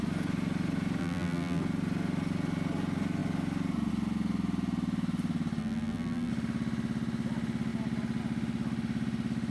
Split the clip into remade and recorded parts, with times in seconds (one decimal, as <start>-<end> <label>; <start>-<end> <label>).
0.0-1.0 recorded; 1.0-1.6 remade; 1.6-5.6 recorded; 5.6-6.3 remade; 6.3-9.5 recorded